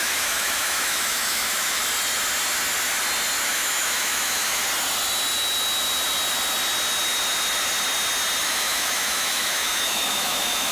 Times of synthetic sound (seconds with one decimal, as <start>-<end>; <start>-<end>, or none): 0.0-1.8; 3.4-4.6; 8.4-10.7